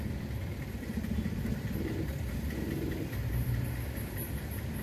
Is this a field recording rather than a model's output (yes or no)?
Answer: no